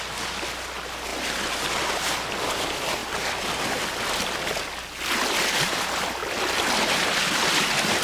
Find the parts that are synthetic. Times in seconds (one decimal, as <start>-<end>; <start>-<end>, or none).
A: 3.0-3.8